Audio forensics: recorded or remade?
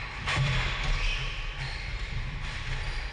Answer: recorded